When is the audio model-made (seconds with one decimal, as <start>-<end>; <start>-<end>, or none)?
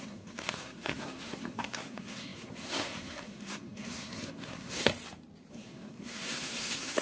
0.0-4.9; 5.5-7.0